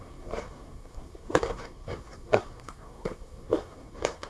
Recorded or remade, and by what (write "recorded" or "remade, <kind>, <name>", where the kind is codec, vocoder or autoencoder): remade, codec, SNAC